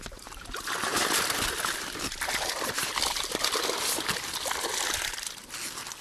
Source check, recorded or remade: recorded